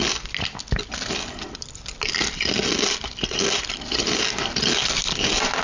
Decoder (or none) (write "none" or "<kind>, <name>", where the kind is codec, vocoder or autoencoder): none